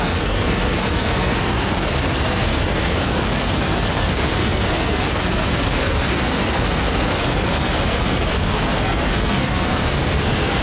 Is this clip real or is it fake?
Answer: fake